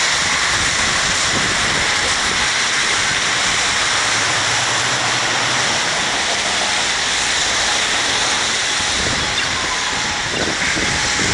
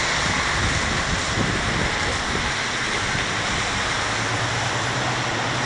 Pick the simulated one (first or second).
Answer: first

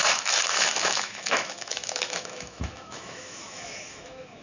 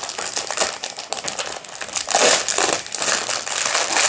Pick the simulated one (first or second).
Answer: first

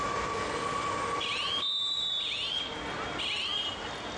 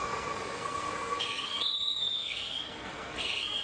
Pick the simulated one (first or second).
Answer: second